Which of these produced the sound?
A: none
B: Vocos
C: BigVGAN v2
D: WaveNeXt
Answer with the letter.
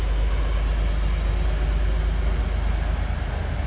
A